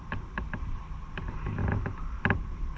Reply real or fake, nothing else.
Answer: real